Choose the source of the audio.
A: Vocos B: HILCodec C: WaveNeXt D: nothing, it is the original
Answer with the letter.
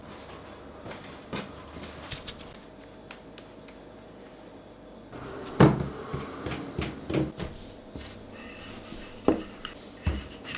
D